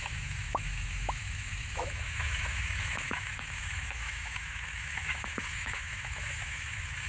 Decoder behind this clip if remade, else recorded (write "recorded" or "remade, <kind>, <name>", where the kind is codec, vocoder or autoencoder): remade, autoencoder, DAC-VAE